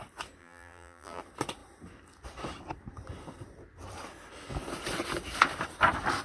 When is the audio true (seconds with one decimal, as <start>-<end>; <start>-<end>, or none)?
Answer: 0.0-0.4; 1.2-6.2